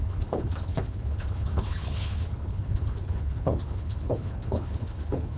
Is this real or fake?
fake